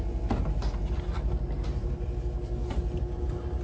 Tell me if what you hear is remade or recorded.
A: recorded